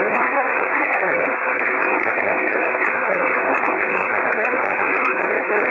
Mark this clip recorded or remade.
remade